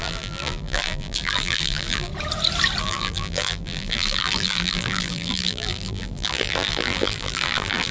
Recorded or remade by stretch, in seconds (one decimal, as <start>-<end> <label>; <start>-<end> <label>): 0.0-2.1 remade; 2.1-2.8 recorded; 2.8-7.9 remade